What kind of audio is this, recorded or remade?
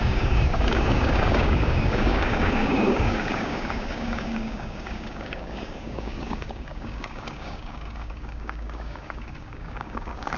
remade